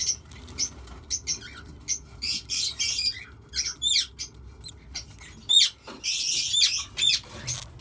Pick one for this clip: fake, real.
real